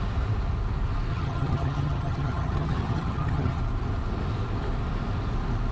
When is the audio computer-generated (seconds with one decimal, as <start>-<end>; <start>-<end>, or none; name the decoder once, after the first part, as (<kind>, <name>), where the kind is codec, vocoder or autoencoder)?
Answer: 1.1-3.6 (vocoder, HiFi-GAN)